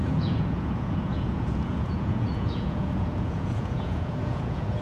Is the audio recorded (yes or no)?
no